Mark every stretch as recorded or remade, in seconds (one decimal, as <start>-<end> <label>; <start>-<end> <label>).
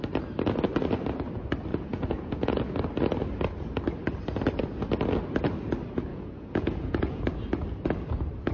0.0-1.7 recorded; 1.7-2.6 remade; 2.6-6.1 recorded; 6.1-7.2 remade; 7.2-8.5 recorded